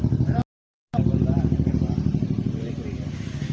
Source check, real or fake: real